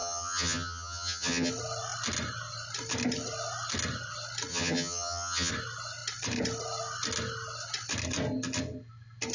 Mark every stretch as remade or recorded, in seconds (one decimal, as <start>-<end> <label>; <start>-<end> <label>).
0.0-1.5 remade; 1.5-4.5 recorded; 4.5-5.5 remade; 5.5-9.3 recorded